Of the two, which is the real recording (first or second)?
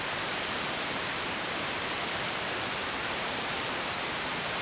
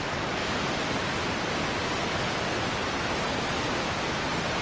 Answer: second